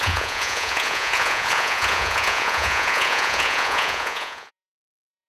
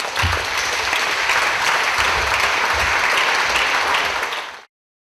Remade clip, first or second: first